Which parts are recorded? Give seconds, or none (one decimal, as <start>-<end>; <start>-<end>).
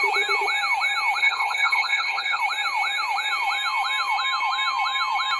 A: 0.0-1.2; 2.4-5.4